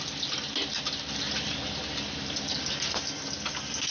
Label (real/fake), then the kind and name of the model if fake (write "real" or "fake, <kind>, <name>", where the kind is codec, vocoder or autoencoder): real